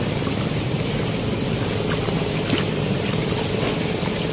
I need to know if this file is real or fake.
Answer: real